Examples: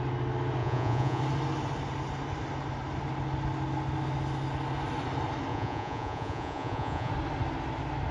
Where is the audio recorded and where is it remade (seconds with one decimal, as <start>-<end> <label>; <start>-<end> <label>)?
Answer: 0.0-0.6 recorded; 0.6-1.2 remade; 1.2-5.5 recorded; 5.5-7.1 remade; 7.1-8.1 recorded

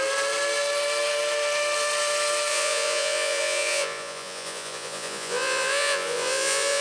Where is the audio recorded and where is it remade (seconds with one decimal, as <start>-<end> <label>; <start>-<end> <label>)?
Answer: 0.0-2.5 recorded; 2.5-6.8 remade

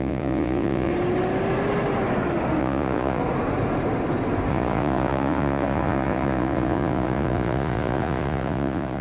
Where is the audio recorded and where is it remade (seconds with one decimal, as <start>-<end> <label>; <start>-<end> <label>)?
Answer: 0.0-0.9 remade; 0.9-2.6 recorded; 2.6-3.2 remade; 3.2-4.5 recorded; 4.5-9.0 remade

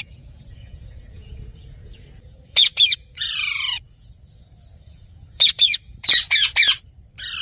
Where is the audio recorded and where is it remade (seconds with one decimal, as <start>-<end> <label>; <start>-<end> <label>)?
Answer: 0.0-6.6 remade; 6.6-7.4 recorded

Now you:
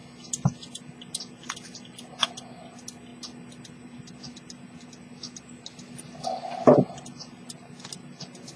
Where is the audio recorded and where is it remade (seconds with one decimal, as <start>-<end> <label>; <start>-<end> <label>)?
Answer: 0.0-8.6 recorded